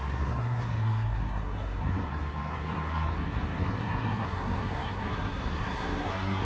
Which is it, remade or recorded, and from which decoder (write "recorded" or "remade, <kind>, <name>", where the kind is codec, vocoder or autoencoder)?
remade, codec, SNAC